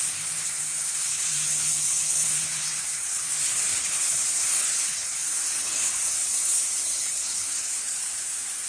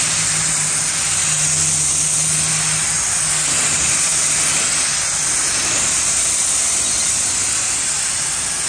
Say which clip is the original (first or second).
second